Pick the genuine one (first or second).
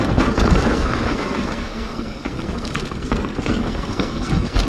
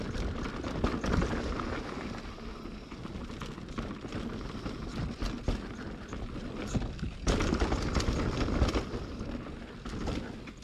second